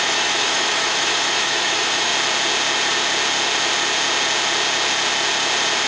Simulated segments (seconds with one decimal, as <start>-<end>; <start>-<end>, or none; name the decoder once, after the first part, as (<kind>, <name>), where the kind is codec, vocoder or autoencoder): 0.0-2.1 (autoencoder, DAC-VAE)